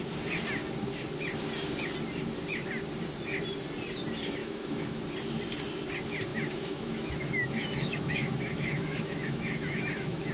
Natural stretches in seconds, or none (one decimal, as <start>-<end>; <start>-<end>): 0.0-4.4; 5.0-6.3